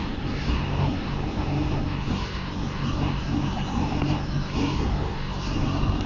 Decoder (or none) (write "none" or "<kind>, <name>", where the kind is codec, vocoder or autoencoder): codec, SNAC